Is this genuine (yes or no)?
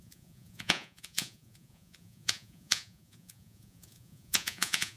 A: no